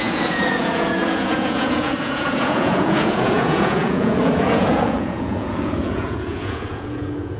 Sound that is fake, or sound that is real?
fake